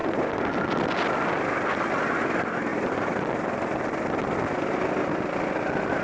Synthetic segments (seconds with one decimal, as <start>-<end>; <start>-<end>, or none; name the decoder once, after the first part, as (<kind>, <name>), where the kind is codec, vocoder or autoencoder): none